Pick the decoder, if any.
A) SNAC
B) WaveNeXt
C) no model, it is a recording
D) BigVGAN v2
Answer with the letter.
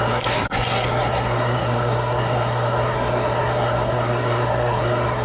A